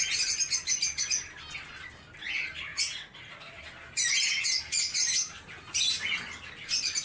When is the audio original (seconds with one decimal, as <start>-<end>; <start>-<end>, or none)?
0.0-2.7; 3.6-7.0